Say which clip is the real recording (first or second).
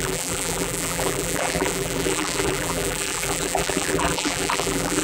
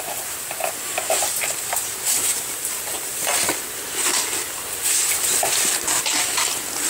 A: second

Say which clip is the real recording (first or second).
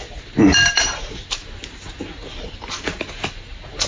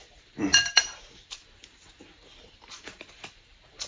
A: first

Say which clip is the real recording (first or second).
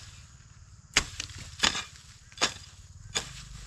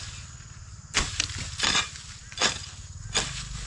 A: second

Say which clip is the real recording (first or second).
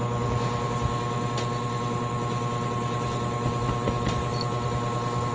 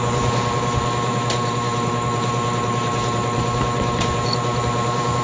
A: first